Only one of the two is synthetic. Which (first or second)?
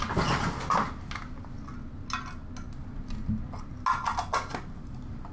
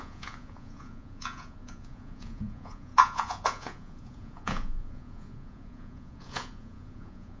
second